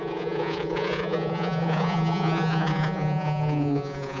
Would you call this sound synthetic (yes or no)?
yes